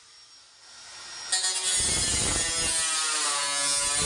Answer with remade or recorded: recorded